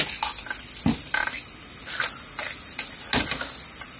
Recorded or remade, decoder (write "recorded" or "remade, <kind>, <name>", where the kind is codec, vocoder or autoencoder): recorded